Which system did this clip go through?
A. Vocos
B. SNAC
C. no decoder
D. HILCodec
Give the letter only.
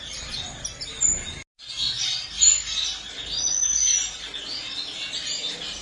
C